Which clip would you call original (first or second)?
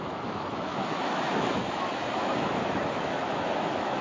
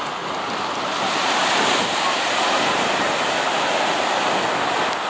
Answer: second